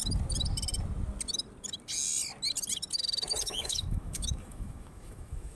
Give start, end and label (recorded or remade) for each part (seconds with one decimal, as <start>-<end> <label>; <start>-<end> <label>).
0.0-3.4 recorded; 3.4-5.6 remade